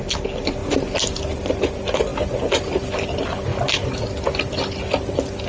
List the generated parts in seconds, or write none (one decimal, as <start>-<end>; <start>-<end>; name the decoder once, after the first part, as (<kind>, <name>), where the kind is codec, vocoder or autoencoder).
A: none